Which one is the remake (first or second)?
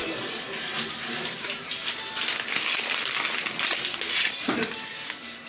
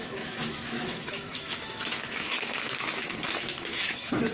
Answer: second